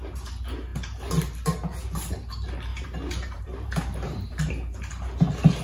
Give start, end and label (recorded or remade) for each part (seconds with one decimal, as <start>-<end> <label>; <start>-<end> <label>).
0.0-2.7 recorded; 2.7-4.4 remade; 4.4-5.6 recorded